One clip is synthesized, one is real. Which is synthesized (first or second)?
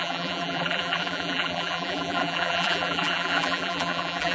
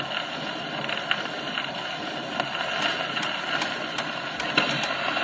first